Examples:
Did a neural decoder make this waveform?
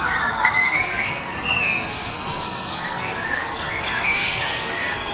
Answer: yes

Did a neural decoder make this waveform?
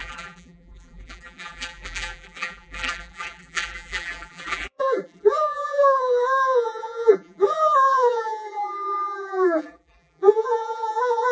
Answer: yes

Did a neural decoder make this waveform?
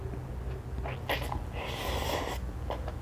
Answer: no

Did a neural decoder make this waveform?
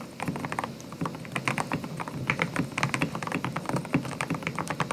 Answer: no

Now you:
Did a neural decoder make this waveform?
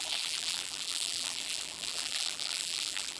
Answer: yes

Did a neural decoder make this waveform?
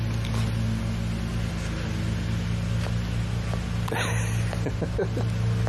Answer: no